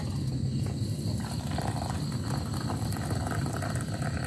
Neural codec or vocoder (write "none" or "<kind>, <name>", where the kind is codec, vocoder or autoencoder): none